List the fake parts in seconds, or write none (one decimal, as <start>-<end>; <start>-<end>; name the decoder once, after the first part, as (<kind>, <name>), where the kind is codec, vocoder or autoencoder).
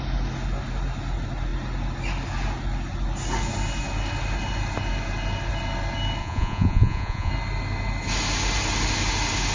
6.2-7.3 (vocoder, Vocos)